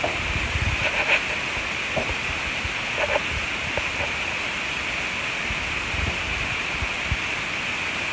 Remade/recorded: recorded